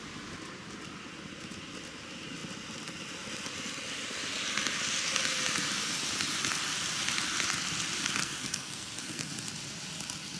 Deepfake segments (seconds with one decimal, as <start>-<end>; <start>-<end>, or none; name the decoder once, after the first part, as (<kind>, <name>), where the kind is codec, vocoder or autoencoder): 8.2-9.3 (codec, SNAC)